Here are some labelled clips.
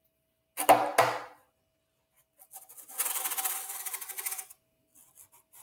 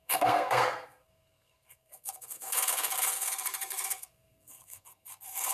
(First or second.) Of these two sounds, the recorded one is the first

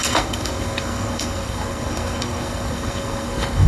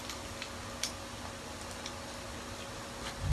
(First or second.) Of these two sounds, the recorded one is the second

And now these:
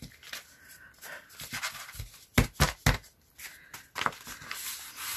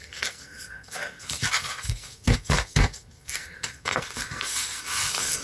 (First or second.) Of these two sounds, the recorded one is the first